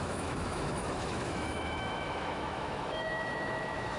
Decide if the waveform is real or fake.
fake